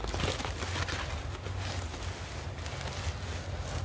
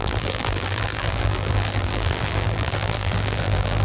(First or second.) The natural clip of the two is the first